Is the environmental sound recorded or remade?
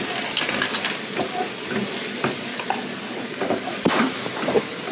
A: recorded